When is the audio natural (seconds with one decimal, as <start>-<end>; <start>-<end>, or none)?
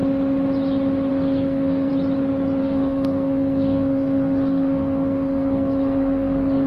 0.0-1.1; 1.9-2.6